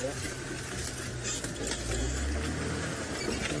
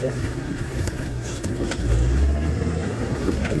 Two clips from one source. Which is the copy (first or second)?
second